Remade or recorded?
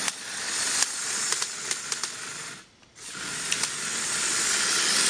recorded